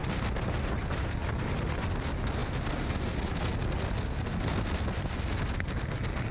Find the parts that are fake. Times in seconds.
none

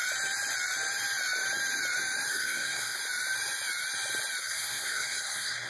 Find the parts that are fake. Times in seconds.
2.3-3.0 (codec, SNAC); 4.4-5.7

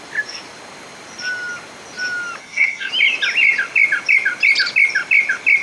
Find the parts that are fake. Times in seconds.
2.4-2.9 (codec, SNAC)

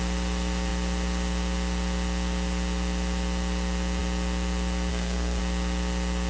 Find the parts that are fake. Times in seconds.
4.9-5.4 (codec, SNAC)

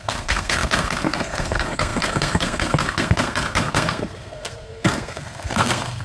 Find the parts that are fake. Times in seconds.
0.0-6.0 (codec, SNAC)

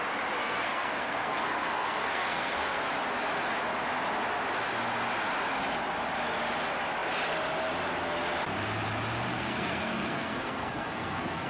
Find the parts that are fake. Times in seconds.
0.4-2.8 (codec, SNAC); 9.3-11.5

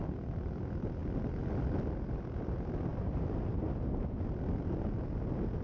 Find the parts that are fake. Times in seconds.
none

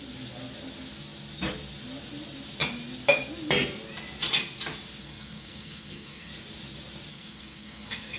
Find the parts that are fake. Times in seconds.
5.0-6.3 (codec, SNAC); 7.1-8.2